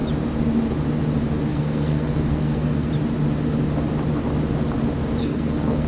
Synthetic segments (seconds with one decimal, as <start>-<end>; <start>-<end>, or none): 1.5-2.9; 5.2-5.9

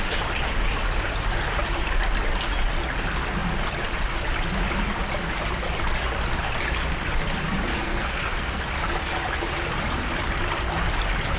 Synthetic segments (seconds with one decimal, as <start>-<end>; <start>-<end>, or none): 7.7-8.6